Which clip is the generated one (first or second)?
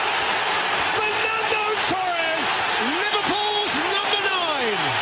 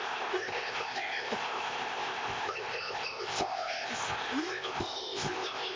second